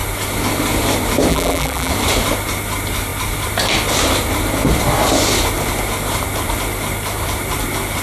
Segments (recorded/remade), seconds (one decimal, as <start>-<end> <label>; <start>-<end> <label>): 0.0-1.3 recorded; 1.3-1.9 remade; 1.9-8.0 recorded